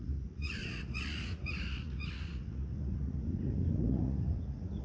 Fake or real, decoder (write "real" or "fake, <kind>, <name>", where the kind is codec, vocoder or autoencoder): fake, vocoder, Vocos